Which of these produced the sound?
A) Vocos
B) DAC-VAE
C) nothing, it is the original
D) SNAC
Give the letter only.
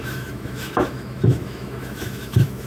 B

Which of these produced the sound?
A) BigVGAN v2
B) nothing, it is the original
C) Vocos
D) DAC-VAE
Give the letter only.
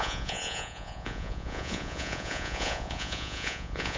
C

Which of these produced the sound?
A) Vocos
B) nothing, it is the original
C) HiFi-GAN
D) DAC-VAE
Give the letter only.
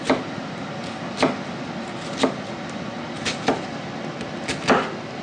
B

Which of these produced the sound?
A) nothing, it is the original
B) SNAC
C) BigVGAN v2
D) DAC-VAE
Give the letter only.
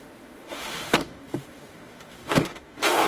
D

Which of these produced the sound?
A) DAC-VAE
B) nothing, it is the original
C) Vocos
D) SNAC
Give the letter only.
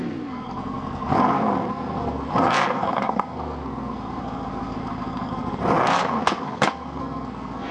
D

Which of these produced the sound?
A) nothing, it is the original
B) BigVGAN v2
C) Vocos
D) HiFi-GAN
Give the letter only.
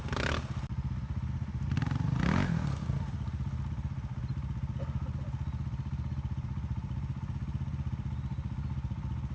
A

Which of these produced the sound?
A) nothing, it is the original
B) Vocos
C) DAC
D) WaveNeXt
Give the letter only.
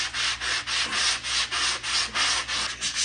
A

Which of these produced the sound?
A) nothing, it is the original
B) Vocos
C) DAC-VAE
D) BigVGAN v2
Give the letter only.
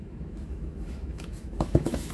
C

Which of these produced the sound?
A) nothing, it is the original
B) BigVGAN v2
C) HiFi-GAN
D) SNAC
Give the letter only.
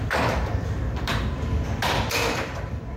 B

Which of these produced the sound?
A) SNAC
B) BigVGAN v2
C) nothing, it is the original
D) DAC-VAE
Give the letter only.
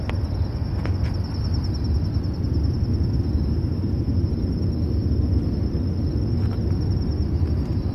C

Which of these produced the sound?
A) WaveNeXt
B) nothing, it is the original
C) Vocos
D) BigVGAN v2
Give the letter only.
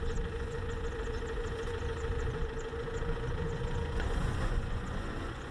C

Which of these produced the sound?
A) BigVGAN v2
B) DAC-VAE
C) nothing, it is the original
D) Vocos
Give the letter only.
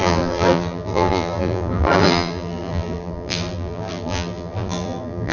A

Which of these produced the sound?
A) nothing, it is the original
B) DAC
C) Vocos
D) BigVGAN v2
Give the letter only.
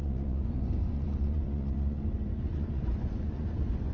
C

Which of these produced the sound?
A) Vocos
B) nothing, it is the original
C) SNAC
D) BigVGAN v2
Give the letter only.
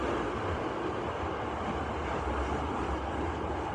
B